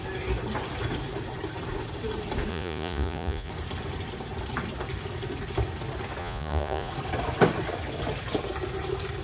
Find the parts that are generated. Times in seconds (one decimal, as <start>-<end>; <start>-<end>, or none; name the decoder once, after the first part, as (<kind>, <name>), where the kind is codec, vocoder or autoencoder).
2.5-3.5 (vocoder, Vocos); 6.2-6.9